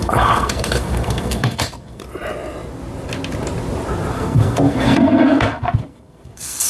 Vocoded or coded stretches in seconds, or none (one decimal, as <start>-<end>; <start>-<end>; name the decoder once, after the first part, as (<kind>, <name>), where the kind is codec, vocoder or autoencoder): 0.0-2.0 (codec, SNAC); 4.1-6.7